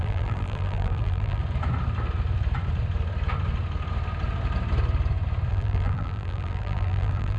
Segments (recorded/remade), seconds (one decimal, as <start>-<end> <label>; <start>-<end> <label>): 0.0-1.4 remade; 1.4-5.5 recorded; 5.5-7.4 remade